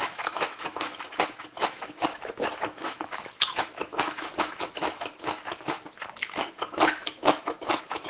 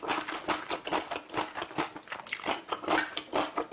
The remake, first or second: first